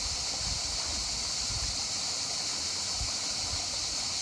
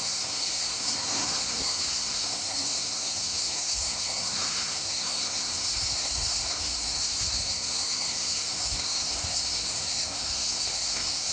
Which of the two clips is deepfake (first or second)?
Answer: second